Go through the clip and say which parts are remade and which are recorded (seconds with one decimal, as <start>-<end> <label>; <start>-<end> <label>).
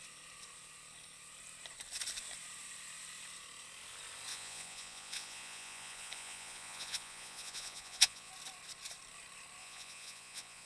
0.0-4.3 recorded; 4.3-8.3 remade; 8.3-9.6 recorded; 9.6-10.7 remade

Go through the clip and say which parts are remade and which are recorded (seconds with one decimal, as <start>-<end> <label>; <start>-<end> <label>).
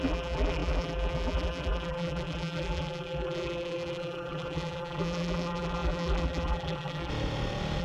0.0-7.1 remade; 7.1-7.8 recorded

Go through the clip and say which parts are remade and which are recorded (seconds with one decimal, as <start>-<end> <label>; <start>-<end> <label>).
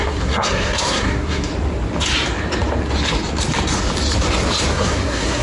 0.0-1.5 remade; 1.5-4.7 recorded; 4.7-5.4 remade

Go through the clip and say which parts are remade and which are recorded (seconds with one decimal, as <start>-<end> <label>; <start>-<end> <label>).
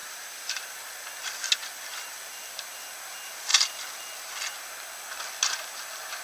0.0-0.6 remade; 0.6-3.5 recorded; 3.5-4.1 remade; 4.1-6.2 recorded